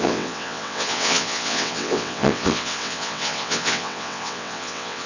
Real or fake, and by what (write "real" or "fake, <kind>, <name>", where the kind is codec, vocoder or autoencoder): fake, vocoder, WaveNeXt